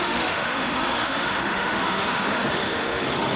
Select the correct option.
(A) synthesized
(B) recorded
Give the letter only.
A